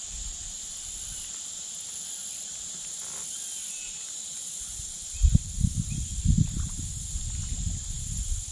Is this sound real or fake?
real